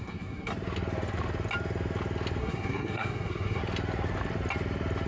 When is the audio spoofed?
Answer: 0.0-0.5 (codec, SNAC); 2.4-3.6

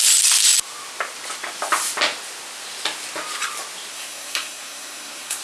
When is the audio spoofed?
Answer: 3.9-5.4 (codec, SNAC)